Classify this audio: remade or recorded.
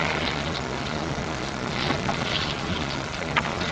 remade